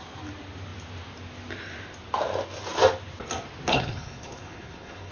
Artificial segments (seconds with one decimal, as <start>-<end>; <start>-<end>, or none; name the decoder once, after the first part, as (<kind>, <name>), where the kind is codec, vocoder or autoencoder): 3.7-5.1 (codec, HILCodec)